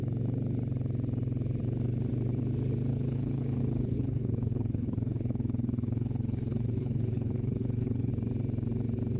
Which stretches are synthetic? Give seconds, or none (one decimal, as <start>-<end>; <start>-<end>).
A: 2.9-8.1